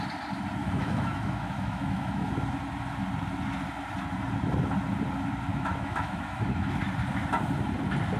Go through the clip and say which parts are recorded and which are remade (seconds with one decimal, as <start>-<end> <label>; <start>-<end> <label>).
0.0-0.6 recorded; 0.6-2.3 remade; 2.3-5.5 recorded; 5.5-6.8 remade; 6.8-8.2 recorded